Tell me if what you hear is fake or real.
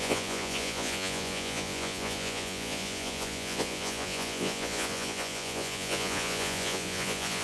fake